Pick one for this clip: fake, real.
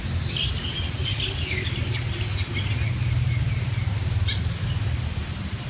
real